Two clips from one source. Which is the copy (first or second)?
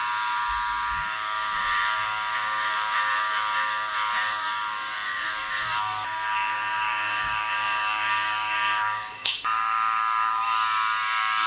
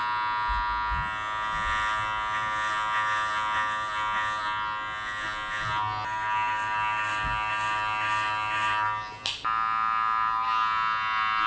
first